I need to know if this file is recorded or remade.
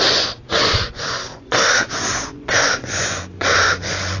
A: remade